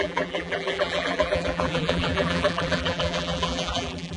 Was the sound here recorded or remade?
remade